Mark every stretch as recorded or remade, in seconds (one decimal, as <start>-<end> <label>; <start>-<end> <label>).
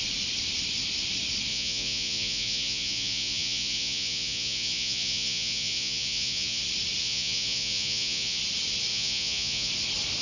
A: 0.0-1.5 recorded; 1.5-6.6 remade; 6.6-7.0 recorded; 7.0-8.4 remade; 8.4-8.9 recorded; 8.9-9.7 remade; 9.7-10.2 recorded